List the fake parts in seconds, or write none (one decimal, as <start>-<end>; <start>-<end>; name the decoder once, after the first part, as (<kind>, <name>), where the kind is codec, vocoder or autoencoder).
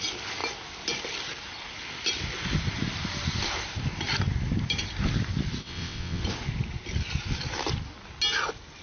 5.6-6.2 (vocoder, WaveNeXt)